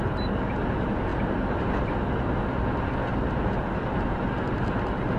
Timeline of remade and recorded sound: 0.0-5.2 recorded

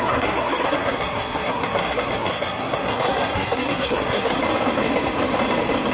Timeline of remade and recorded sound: 0.0-4.4 remade; 4.4-5.9 recorded

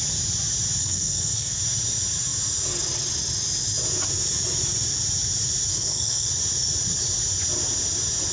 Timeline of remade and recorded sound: 0.0-0.8 recorded; 0.8-1.6 remade; 1.6-5.7 recorded; 5.7-6.3 remade; 6.3-8.3 recorded

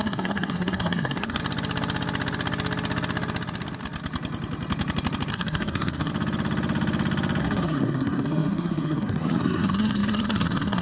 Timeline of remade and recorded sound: 0.0-1.4 remade; 1.4-5.3 recorded; 5.3-6.1 remade; 6.1-7.4 recorded; 7.4-10.8 remade

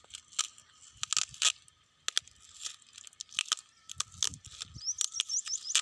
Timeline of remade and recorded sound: 0.0-5.8 recorded

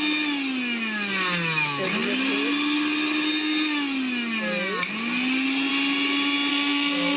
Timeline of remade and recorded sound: 0.0-6.5 recorded; 6.5-7.2 remade

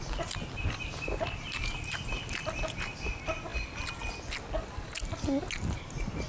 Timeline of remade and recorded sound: 0.0-6.3 recorded

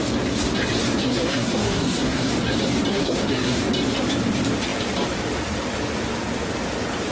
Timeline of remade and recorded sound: 0.0-1.0 recorded; 1.0-2.3 remade; 2.3-2.9 recorded; 2.9-3.6 remade; 3.6-7.1 recorded